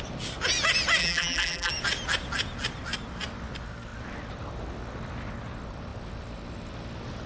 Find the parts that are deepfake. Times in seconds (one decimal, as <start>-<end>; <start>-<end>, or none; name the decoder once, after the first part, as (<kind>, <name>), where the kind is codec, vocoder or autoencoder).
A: 1.0-1.7 (vocoder, BigVGAN v2)